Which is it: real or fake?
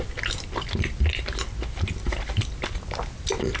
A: real